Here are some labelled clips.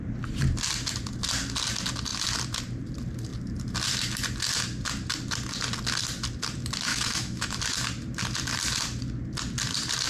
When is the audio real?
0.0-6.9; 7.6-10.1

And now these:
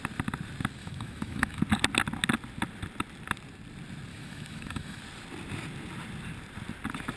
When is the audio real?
0.0-0.8; 1.6-4.1; 5.0-7.2